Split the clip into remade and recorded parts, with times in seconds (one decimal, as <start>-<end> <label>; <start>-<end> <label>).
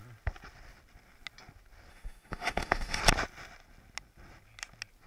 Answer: 0.0-1.9 recorded; 1.9-3.0 remade; 3.0-5.1 recorded